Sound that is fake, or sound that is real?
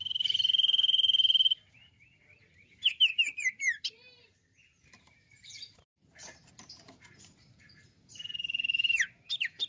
fake